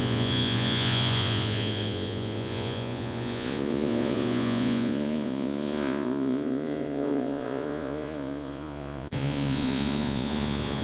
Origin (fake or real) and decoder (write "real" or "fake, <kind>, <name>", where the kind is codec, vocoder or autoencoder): fake, vocoder, Vocos